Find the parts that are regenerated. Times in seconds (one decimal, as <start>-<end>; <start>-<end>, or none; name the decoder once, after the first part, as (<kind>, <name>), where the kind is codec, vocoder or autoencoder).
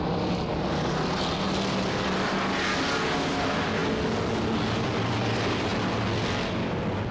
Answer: none